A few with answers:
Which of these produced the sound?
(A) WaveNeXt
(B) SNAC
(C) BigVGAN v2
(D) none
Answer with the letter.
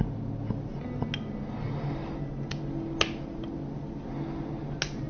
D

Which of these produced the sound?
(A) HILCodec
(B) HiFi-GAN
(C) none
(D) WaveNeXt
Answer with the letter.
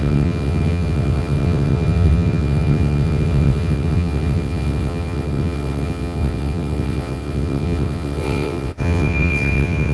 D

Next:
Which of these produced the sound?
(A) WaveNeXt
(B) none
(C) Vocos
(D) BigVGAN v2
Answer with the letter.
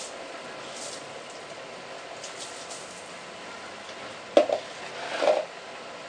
B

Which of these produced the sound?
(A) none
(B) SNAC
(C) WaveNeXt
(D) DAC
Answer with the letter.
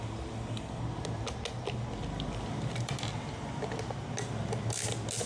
A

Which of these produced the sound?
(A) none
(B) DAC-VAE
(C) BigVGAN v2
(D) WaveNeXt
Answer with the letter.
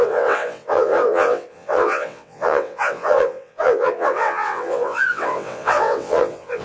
D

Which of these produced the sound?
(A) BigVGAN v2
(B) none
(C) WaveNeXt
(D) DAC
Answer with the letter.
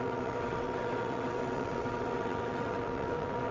C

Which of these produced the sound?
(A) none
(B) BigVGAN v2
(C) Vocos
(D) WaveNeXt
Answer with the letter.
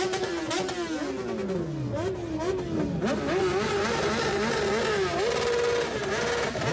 A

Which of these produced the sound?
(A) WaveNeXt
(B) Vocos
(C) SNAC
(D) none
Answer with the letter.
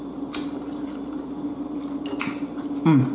D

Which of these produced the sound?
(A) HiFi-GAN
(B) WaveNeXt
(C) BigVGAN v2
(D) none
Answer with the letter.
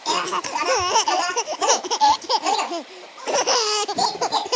D